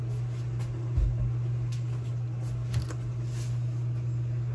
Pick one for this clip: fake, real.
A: real